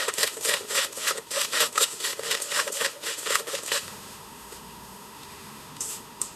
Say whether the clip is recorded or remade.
remade